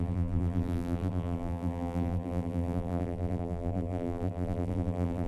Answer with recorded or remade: remade